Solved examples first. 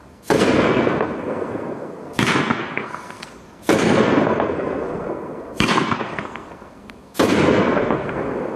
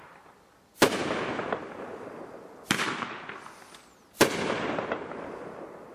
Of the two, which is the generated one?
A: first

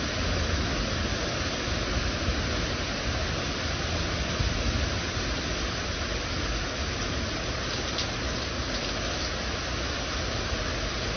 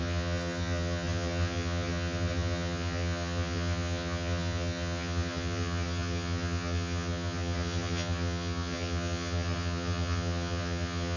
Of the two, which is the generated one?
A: second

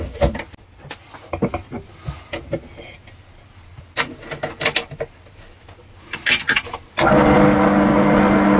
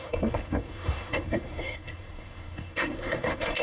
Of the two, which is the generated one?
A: second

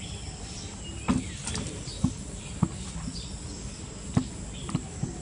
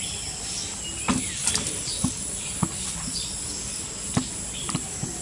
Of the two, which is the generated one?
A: second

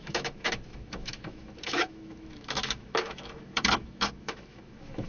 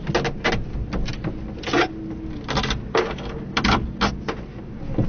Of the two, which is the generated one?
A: first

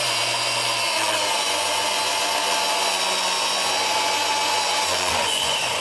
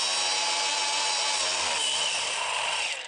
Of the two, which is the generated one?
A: first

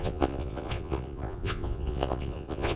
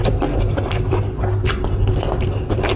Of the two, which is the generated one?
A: first